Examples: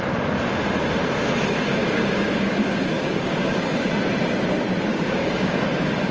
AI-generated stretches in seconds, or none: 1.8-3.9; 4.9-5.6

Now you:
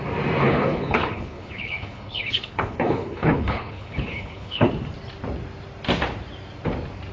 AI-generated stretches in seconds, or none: 0.4-4.7